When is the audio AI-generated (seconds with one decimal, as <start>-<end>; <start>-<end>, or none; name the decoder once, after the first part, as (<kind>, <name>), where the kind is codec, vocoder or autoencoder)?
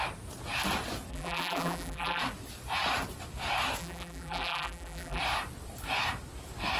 1.1-2.2 (vocoder, BigVGAN v2); 3.8-5.2